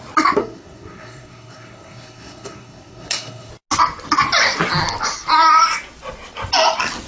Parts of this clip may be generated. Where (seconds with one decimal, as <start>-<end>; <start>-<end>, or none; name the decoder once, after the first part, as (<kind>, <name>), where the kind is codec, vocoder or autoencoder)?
0.4-3.5 (codec, SNAC)